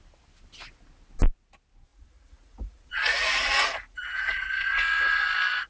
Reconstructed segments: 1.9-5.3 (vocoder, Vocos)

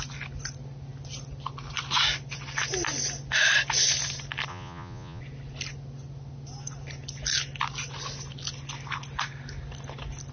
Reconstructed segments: 4.5-5.2 (vocoder, Vocos)

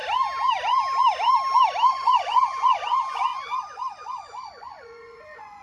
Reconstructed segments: 1.9-5.6 (vocoder, Vocos)

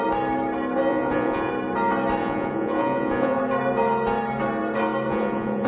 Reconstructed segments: 0.9-1.5 (vocoder, Vocos); 2.2-3.4; 5.1-5.7

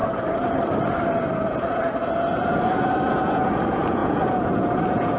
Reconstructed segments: 3.1-5.2 (vocoder, Vocos)

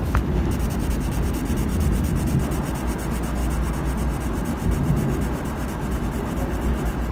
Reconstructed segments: none

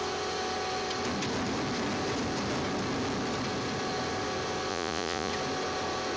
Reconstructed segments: 4.7-5.3 (vocoder, Vocos)